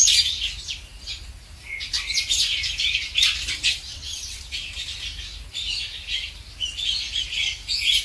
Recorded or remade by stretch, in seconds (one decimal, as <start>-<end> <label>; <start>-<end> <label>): 0.0-3.9 recorded; 3.9-4.4 remade; 4.4-8.0 recorded